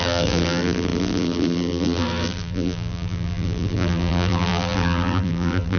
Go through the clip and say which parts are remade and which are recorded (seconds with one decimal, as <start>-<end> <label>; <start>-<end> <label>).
0.0-5.8 remade